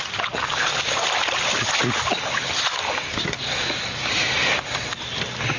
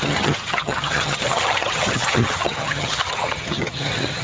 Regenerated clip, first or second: second